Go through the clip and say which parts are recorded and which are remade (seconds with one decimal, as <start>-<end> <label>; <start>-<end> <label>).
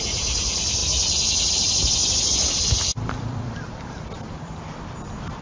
0.0-0.8 remade; 0.8-1.5 recorded; 1.5-5.4 remade